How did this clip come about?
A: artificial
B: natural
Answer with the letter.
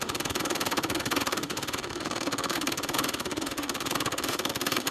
A